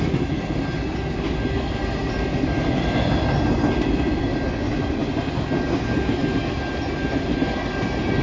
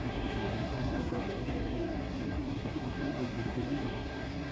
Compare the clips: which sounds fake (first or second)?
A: second